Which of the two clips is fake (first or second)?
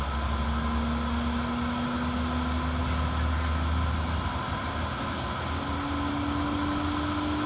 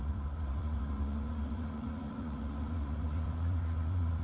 second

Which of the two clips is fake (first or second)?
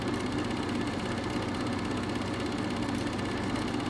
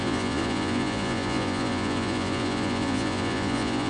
second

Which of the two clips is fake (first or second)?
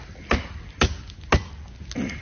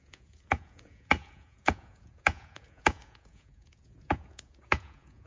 second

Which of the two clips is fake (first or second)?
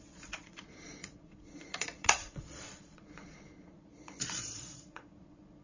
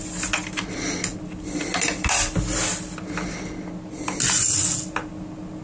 first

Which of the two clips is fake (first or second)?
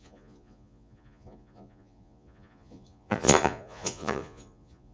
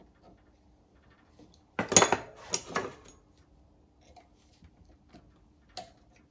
first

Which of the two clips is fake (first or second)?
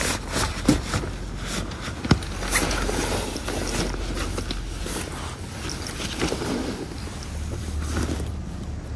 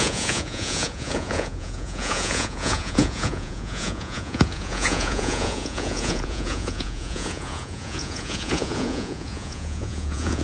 second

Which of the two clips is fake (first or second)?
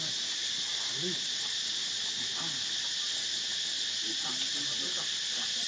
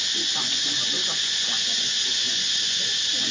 second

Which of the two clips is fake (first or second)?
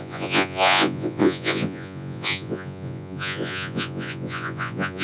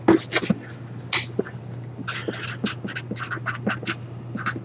first